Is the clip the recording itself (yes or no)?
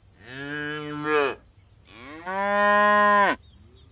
yes